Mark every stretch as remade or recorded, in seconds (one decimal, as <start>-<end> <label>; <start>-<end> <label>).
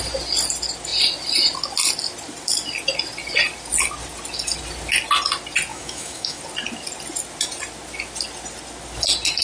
0.0-5.7 recorded; 5.7-6.4 remade; 6.4-9.4 recorded